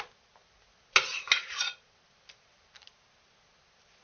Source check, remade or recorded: recorded